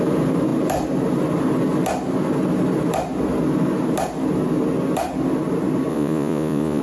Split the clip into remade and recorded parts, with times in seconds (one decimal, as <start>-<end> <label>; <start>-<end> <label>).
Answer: 0.0-5.9 recorded; 5.9-6.8 remade